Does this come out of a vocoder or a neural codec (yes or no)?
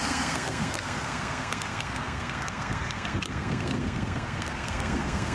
yes